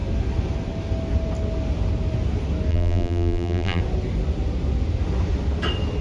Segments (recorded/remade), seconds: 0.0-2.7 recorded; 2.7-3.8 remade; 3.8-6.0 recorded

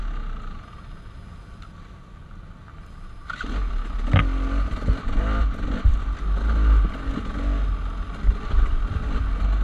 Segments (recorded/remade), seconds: 0.0-9.6 recorded

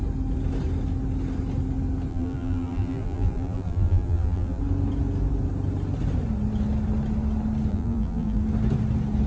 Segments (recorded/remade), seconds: 0.0-2.1 recorded; 2.1-4.6 remade; 4.6-7.7 recorded; 7.7-8.4 remade; 8.4-9.3 recorded